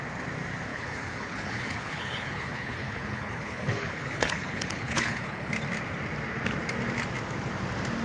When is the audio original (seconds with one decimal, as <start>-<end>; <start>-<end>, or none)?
0.0-0.7; 5.5-8.0